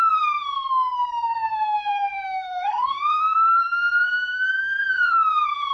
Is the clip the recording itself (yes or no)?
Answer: no